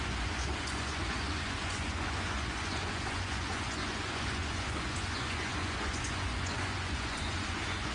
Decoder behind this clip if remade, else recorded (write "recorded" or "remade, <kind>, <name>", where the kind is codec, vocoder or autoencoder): remade, vocoder, Vocos